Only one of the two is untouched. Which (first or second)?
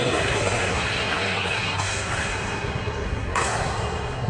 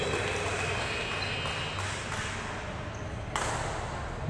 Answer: second